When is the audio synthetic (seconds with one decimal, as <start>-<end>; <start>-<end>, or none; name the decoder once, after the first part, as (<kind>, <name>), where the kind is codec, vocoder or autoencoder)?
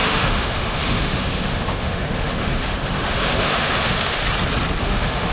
0.0-4.2 (autoencoder, DAC-VAE); 4.8-5.3